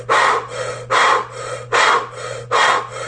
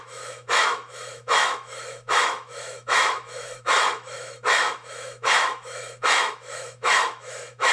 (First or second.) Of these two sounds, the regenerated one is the second